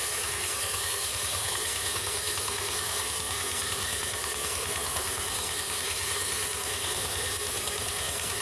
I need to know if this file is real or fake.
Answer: fake